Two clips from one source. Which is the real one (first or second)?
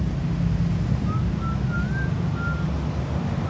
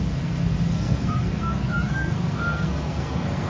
first